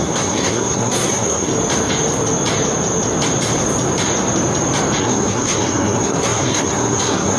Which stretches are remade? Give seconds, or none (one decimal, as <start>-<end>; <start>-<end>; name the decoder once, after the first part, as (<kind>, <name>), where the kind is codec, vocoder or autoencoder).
0.0-1.5 (codec, SNAC); 5.0-7.4